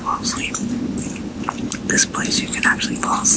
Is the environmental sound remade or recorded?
recorded